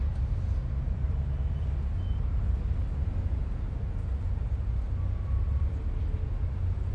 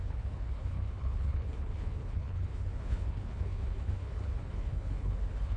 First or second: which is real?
first